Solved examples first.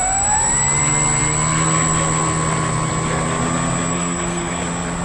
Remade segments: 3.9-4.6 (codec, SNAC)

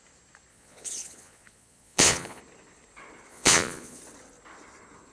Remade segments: 0.5-2.4 (vocoder, Vocos); 3.3-4.0

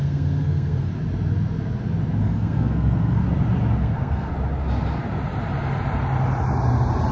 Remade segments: 0.0-0.9 (codec, SNAC); 2.2-3.2; 3.8-4.3

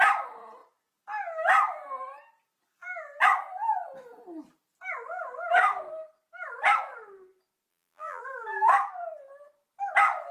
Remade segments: 7.7-8.2 (vocoder, BigVGAN v2)

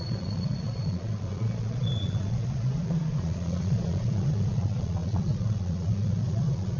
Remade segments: 0.0-6.8 (vocoder, Vocos)

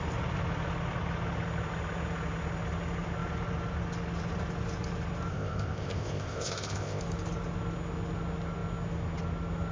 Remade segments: 5.3-7.0 (codec, ZipCodec)

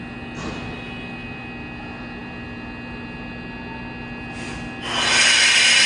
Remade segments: none

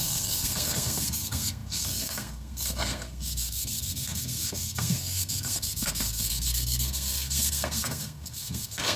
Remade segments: 0.0-9.0 (codec, SNAC)